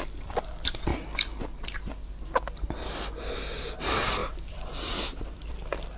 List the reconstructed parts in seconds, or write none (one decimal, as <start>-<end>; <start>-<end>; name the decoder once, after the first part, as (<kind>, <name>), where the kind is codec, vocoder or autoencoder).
4.2-5.5 (vocoder, BigVGAN v2)